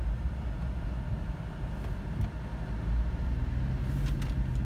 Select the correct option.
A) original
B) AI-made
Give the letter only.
A